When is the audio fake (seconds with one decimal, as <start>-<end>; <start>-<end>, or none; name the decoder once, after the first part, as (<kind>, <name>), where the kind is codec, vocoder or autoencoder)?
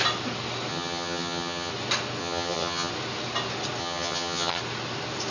0.7-1.7 (vocoder, HiFi-GAN); 2.2-2.9; 3.8-4.6